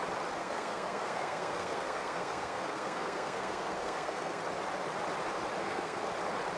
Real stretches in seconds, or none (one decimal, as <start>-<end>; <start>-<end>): 0.0-0.4; 4.4-5.6; 6.1-6.6